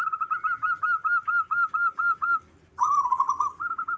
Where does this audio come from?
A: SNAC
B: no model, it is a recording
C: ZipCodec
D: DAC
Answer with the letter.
B